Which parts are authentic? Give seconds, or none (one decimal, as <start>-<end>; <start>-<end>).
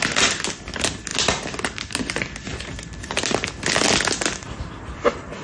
0.0-5.4